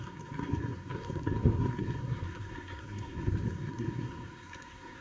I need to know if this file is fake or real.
fake